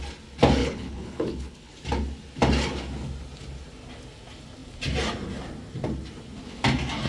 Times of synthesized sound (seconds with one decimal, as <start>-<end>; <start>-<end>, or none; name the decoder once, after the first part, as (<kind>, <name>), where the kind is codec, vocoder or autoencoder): 0.6-1.7 (codec, HILCodec)